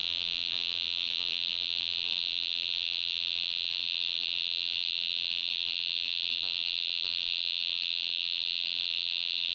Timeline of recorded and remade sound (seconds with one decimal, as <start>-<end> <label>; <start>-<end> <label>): 0.0-9.5 remade